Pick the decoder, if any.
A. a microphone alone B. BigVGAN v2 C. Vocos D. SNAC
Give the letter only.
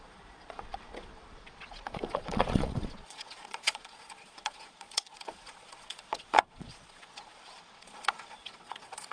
C